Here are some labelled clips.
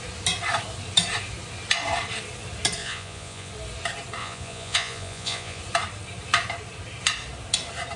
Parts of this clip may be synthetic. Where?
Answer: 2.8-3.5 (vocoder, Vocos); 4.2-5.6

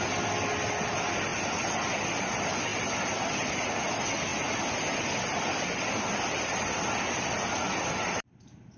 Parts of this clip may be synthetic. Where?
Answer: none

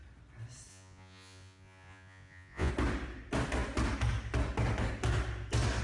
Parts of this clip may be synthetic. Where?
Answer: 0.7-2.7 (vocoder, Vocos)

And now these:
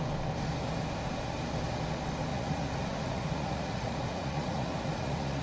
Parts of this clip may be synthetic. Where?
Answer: 2.3-5.4 (vocoder, Vocos)

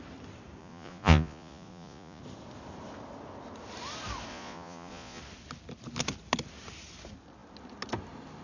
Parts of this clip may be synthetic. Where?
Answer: 0.6-2.2 (vocoder, Vocos); 4.3-5.2

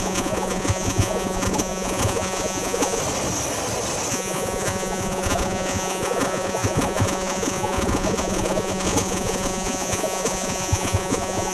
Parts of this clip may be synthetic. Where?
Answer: 0.0-3.0 (vocoder, Vocos); 4.1-11.5

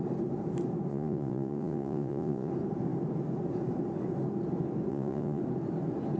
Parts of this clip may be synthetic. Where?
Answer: 0.9-2.5 (vocoder, Vocos); 4.9-5.4